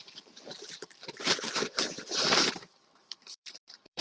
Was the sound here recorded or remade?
remade